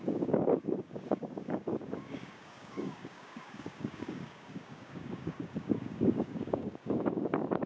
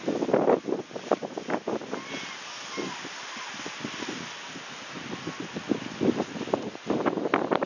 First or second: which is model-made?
first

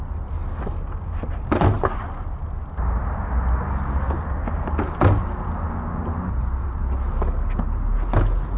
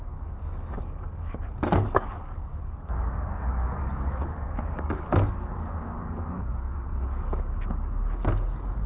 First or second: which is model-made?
second